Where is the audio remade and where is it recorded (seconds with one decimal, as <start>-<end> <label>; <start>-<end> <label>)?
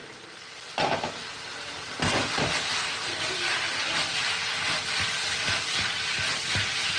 0.0-7.0 recorded